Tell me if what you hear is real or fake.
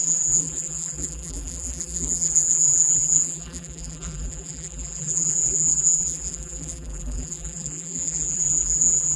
fake